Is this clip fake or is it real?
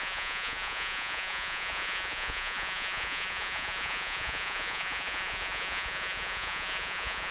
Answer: fake